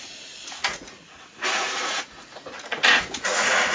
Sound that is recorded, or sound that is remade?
remade